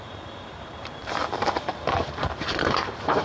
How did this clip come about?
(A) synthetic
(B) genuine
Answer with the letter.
A